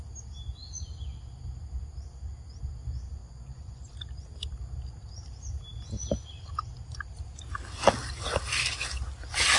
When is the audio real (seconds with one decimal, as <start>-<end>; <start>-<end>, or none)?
0.0-3.2; 3.9-9.6